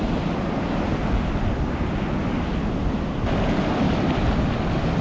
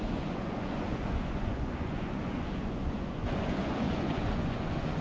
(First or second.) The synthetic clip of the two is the second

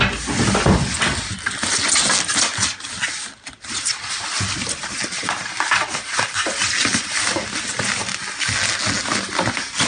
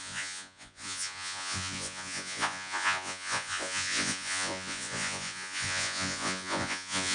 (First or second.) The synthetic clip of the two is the second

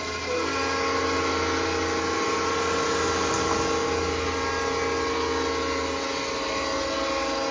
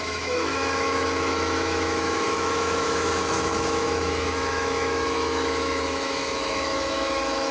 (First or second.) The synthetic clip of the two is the second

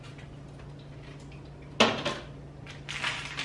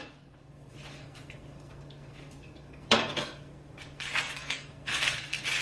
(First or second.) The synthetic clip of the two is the second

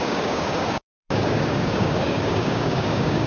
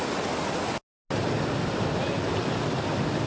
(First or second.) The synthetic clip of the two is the first